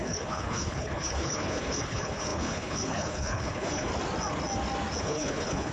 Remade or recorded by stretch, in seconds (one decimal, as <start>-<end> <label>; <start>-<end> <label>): 0.0-3.9 remade; 3.9-5.0 recorded; 5.0-5.7 remade